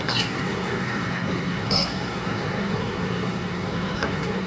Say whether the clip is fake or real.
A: fake